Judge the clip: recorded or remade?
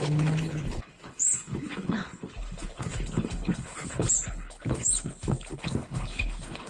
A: remade